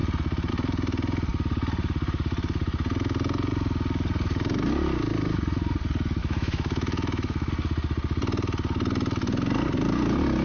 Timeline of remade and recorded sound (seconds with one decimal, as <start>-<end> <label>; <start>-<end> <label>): 0.0-6.2 recorded; 6.2-7.5 remade; 7.5-10.4 recorded